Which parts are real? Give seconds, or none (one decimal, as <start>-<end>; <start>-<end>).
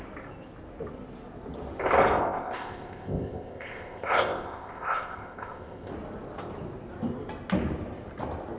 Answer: 0.0-2.2; 5.9-8.6